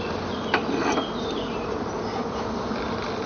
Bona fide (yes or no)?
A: yes